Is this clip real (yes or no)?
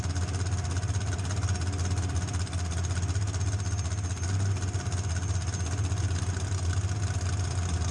yes